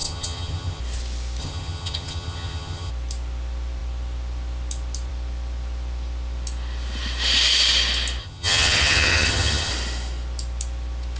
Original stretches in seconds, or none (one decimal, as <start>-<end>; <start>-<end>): 0.8-1.4; 2.9-8.2; 9.7-11.2